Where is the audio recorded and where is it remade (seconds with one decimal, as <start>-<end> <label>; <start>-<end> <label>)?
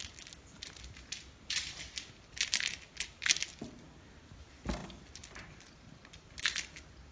0.0-7.1 recorded